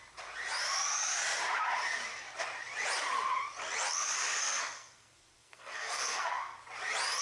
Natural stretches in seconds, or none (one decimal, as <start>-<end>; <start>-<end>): 0.0-4.4; 6.6-7.2